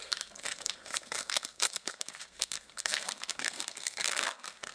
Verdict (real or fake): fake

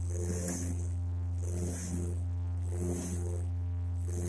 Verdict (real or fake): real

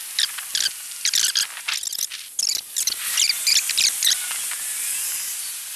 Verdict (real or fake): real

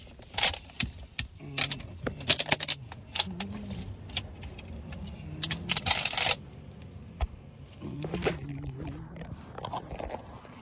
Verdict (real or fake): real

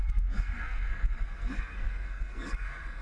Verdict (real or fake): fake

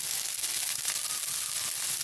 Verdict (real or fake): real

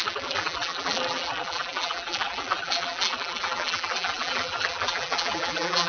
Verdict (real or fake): fake